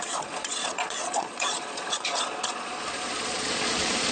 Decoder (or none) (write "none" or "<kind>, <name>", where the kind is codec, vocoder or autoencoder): vocoder, Vocos